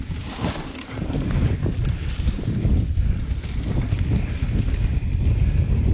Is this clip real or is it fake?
real